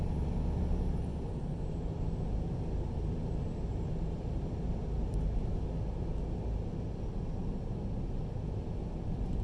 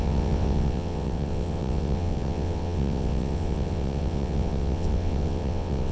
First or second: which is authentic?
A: first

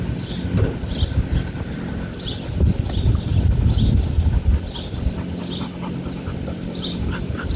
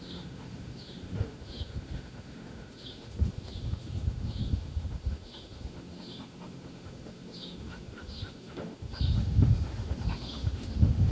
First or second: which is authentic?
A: first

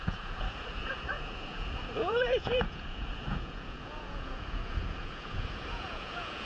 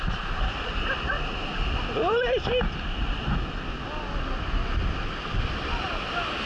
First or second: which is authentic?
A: second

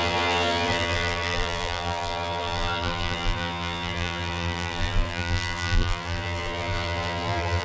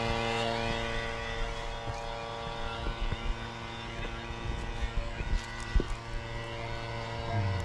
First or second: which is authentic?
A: second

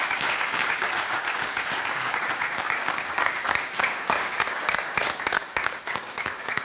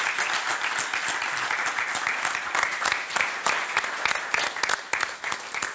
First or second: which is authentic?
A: second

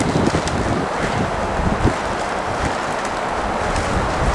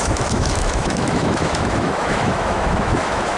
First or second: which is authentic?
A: first